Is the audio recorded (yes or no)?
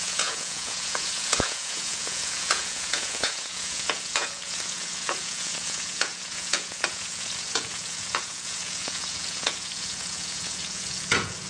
no